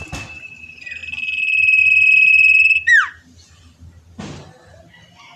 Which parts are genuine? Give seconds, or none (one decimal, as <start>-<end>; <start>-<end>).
0.0-5.4